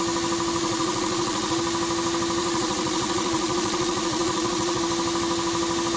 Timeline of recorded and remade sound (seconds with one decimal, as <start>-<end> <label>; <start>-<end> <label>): 0.0-0.6 recorded; 0.6-1.6 remade; 1.6-2.4 recorded; 2.4-4.8 remade; 4.8-6.0 recorded